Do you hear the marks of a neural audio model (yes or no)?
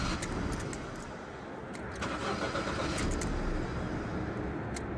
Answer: no